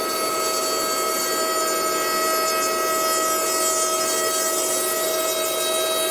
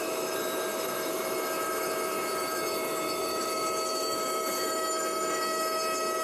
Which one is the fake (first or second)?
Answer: second